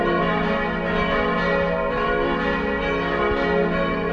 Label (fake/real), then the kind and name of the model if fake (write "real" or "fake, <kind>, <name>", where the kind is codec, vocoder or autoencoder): real